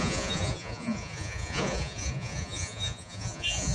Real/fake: fake